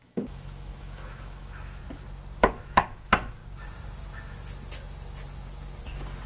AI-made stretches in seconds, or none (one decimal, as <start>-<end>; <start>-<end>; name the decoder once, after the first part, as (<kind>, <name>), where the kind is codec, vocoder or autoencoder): 0.0-1.8 (autoencoder, DAC-VAE); 2.4-3.4